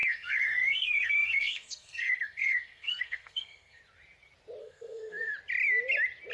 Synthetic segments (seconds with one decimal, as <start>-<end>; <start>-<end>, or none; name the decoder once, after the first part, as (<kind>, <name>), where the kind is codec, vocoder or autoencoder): 0.0-3.8 (codec, SNAC); 4.6-5.3